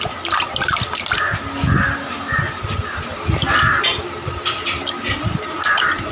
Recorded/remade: recorded